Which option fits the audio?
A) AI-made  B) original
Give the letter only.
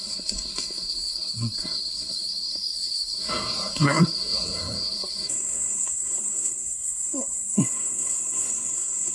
A